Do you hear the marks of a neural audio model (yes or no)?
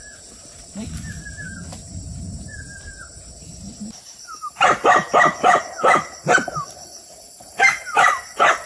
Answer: yes